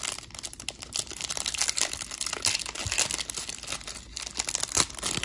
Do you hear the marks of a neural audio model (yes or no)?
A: no